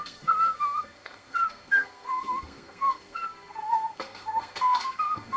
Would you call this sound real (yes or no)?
no